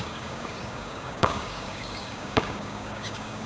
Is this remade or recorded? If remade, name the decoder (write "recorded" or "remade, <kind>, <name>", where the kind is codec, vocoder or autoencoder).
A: remade, codec, DAC